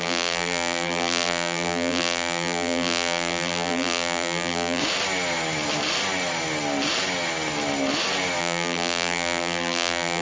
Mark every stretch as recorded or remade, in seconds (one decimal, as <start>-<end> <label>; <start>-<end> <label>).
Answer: 0.0-4.8 remade; 4.8-8.4 recorded; 8.4-10.2 remade